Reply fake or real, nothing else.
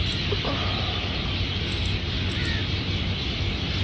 real